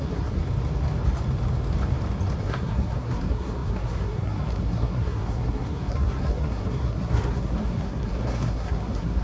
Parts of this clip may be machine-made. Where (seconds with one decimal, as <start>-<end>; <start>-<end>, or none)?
0.0-0.4; 2.4-9.2